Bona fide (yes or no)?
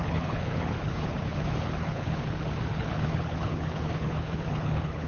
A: no